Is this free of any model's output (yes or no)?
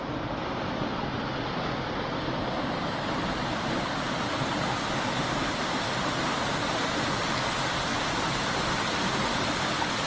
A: yes